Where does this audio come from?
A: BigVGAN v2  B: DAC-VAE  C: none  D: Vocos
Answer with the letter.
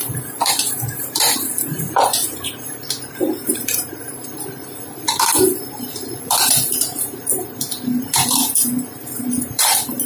A